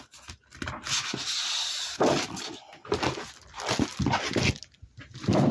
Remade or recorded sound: recorded